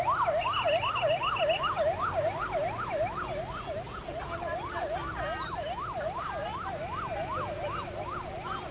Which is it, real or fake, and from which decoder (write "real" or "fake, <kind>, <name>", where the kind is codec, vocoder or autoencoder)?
real